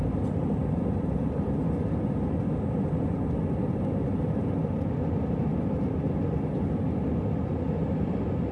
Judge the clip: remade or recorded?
recorded